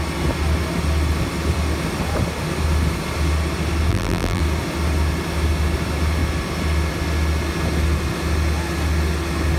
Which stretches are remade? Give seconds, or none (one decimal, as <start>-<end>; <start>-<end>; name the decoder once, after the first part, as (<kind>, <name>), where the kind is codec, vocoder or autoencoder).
3.9-4.4 (vocoder, BigVGAN v2)